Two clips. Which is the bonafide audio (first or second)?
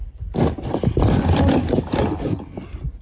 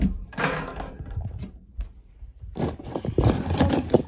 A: first